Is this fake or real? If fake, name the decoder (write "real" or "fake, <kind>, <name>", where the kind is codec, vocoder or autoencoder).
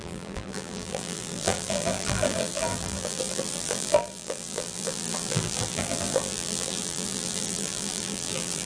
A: fake, vocoder, BigVGAN v2